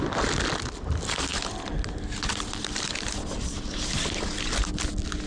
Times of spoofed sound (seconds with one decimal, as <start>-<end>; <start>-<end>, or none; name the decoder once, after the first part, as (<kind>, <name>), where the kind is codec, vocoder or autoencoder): none

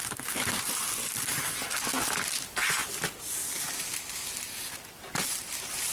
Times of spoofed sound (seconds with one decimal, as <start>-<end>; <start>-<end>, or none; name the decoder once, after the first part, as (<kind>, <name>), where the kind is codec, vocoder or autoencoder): none

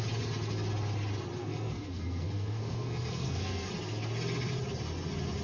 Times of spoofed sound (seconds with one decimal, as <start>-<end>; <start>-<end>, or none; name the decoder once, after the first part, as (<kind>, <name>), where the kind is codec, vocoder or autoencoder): 1.4-3.7 (codec, SNAC)

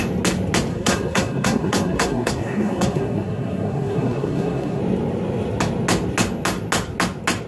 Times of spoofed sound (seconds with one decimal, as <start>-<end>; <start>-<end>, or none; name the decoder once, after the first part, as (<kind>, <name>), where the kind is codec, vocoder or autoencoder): 0.7-4.8 (codec, SNAC)

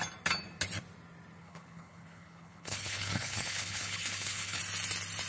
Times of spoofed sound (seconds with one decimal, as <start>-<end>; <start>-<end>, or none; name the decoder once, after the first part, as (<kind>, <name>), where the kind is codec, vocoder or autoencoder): 1.4-4.6 (codec, HILCodec)

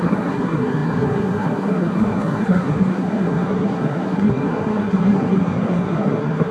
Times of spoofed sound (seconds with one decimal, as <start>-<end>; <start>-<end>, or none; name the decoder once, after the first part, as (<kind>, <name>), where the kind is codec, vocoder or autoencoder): 0.0-6.5 (codec, SNAC)

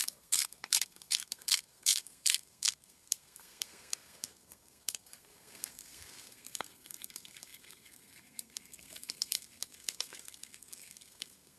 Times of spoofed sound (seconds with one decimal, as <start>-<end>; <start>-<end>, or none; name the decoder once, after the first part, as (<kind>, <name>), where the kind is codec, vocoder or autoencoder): 0.0-11.6 (codec, SNAC)